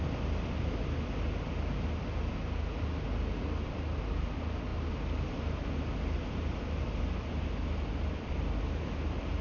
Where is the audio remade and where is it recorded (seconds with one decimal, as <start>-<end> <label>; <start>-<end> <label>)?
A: 0.0-9.4 recorded